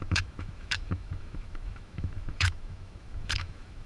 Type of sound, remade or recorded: remade